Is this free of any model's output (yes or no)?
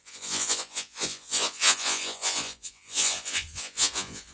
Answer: no